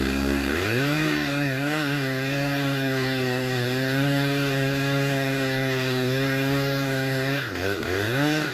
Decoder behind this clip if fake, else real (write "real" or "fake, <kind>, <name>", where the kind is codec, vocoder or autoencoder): fake, codec, DAC